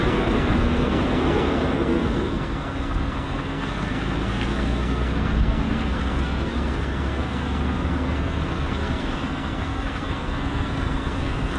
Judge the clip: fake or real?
fake